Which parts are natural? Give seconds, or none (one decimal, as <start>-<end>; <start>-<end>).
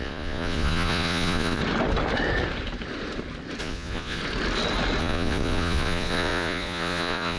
1.6-3.6; 4.2-5.0